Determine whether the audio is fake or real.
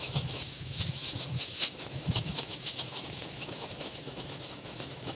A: fake